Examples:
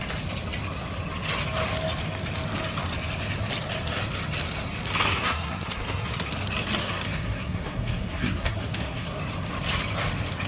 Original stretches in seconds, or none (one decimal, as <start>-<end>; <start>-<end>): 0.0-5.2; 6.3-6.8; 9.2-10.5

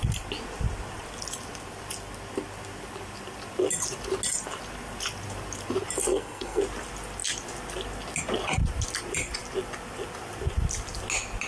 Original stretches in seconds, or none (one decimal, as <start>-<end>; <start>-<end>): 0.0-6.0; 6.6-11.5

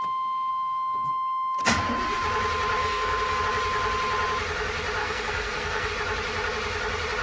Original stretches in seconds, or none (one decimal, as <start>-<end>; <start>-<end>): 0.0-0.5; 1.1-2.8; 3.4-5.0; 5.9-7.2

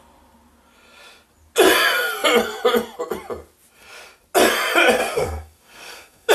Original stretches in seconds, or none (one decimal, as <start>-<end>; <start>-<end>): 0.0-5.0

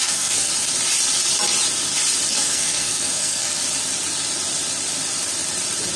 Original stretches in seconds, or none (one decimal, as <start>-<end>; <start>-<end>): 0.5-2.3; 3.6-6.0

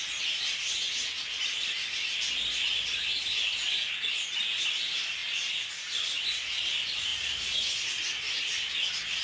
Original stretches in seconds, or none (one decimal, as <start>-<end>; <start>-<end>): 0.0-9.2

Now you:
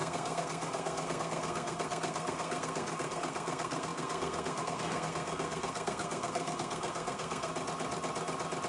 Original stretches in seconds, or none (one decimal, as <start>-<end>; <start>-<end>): 7.5-8.7

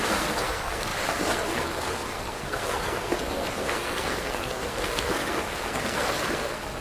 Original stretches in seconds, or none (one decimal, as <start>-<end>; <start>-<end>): none